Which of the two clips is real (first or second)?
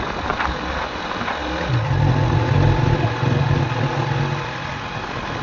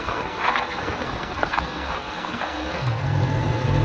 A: first